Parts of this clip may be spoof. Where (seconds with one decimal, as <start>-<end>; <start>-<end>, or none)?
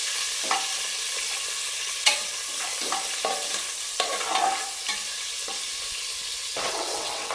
1.6-2.3; 6.7-7.3